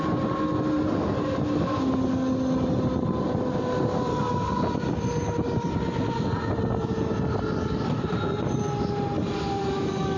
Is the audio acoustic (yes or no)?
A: yes